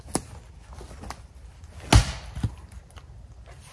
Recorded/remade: recorded